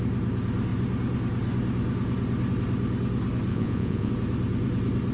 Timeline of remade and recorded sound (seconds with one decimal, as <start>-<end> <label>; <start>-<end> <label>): 0.0-3.5 recorded; 3.5-4.1 remade; 4.1-5.1 recorded